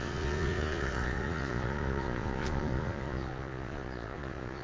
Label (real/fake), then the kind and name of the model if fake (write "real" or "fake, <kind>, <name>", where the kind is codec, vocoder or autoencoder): fake, vocoder, Vocos